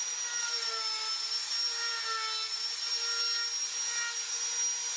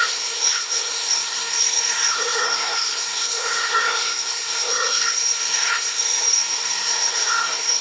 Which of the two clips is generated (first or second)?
second